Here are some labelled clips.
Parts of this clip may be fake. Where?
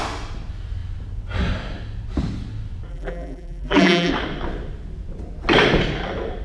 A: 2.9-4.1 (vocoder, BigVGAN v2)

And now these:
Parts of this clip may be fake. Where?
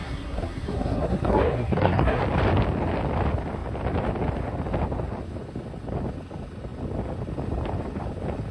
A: 0.0-2.2 (codec, SNAC)